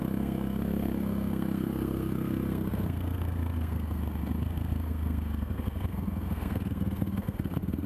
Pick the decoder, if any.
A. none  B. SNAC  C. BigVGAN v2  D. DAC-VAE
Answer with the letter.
B